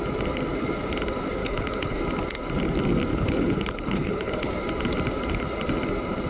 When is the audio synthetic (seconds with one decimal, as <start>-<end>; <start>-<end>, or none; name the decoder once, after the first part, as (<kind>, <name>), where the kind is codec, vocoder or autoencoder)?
1.4-2.0 (codec, HILCodec); 3.1-4.5